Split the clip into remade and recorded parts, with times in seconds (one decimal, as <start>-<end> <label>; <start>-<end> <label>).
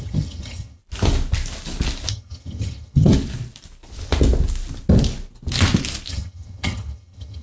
0.0-0.8 remade; 0.8-2.1 recorded; 2.1-3.1 remade; 3.1-6.1 recorded; 6.1-7.4 remade